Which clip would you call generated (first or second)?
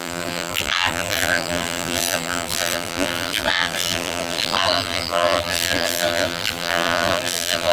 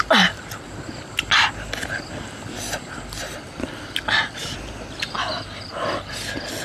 first